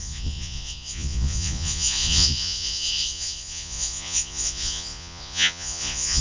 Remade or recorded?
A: remade